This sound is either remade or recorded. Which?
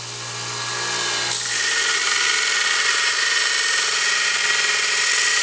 recorded